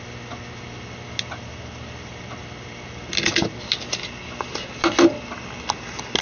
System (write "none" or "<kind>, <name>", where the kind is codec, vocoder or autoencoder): none